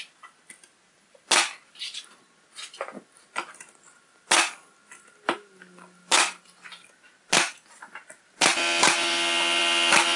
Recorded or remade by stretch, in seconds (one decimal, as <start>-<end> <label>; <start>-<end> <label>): 0.0-10.2 recorded